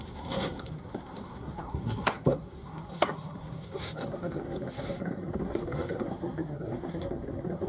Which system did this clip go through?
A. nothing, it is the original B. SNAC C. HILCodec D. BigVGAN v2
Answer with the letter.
B